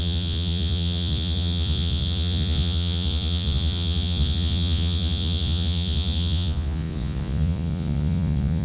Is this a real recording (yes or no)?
no